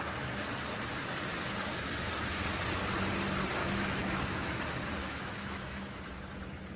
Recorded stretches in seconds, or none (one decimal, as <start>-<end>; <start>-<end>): 0.0-3.6; 4.5-5.0; 6.0-6.8